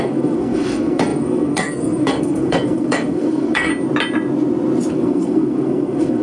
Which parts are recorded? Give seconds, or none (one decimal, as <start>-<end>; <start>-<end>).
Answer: 3.7-4.9